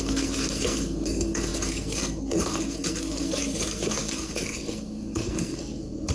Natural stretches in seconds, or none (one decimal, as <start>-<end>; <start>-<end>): none